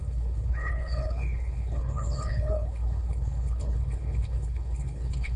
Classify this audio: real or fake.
fake